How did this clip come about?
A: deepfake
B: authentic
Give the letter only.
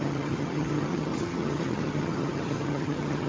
A